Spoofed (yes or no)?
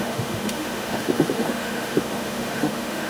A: yes